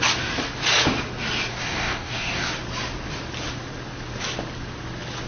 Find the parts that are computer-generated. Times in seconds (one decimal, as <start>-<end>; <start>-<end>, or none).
1.5-2.5